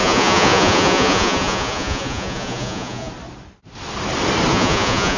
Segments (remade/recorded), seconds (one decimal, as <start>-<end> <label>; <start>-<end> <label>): 0.0-3.1 remade; 3.1-4.5 recorded; 4.5-5.2 remade